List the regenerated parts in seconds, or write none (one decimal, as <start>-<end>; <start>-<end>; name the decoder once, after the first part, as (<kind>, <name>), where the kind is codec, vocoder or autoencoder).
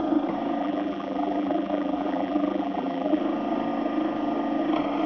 0.6-3.2 (vocoder, BigVGAN v2)